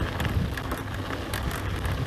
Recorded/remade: recorded